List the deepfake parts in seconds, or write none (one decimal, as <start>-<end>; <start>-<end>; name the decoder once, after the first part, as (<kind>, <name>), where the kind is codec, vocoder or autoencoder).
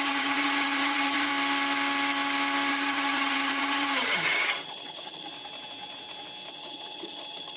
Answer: 0.0-1.3 (vocoder, HiFi-GAN); 2.7-5.3; 6.5-7.6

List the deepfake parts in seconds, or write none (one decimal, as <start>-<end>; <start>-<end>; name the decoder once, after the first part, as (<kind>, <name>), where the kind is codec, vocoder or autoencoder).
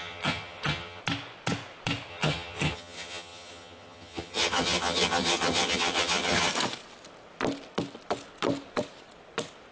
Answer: 0.0-1.0 (vocoder, HiFi-GAN); 2.1-6.5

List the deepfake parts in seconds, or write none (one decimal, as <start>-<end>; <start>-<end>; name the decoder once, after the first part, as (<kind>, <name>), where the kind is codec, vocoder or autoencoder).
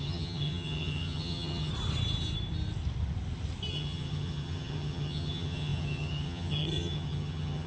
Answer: 0.0-1.7 (vocoder, HiFi-GAN); 3.7-7.7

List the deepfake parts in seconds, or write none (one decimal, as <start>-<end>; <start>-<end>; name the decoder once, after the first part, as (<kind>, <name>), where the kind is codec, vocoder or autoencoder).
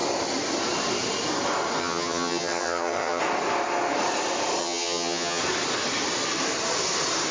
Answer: 1.8-3.2 (vocoder, HiFi-GAN); 4.6-5.4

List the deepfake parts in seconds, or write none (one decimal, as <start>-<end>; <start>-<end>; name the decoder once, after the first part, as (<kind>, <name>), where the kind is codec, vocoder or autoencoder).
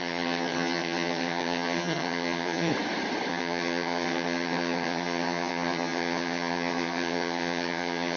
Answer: 0.0-2.7 (vocoder, HiFi-GAN); 3.3-8.2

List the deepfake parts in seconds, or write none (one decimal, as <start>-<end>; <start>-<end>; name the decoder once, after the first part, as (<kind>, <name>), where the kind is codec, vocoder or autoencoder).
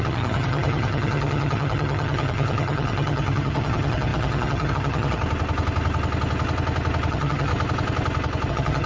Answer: 0.0-5.2 (vocoder, HiFi-GAN); 7.1-7.5; 8.5-8.9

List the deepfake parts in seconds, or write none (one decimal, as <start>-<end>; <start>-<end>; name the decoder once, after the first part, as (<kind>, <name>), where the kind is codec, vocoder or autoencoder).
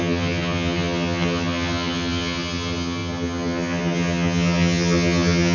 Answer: 0.0-5.5 (vocoder, HiFi-GAN)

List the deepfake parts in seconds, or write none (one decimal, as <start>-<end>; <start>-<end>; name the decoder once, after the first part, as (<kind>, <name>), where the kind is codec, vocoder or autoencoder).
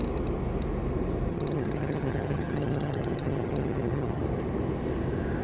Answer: 1.3-4.2 (vocoder, HiFi-GAN)